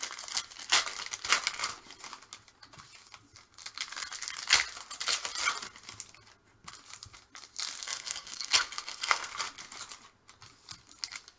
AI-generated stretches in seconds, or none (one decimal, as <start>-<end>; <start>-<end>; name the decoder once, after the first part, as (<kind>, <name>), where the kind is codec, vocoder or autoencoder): 7.8-9.3 (codec, SNAC)